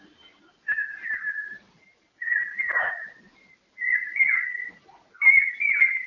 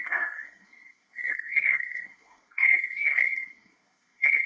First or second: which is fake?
second